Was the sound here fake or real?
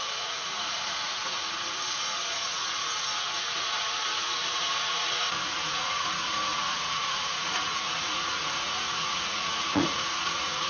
fake